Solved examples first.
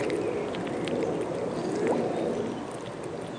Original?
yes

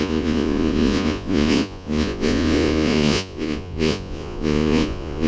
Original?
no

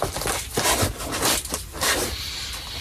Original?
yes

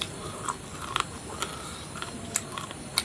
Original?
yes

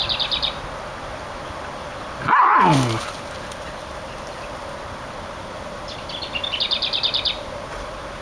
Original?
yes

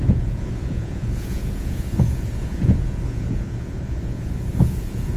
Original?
no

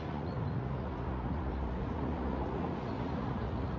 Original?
no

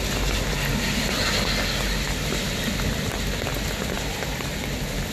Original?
yes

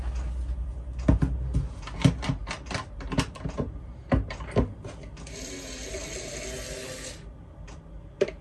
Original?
yes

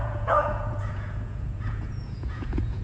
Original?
no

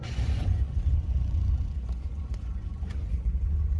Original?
no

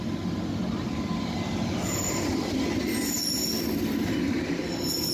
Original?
yes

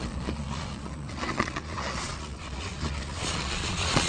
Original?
no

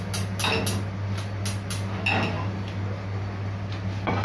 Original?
yes